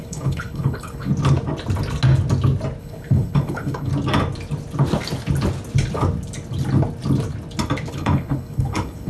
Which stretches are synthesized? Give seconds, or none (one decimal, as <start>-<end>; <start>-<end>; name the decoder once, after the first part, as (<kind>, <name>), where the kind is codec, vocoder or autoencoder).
0.0-1.1 (codec, HILCodec); 2.8-3.9; 7.9-9.1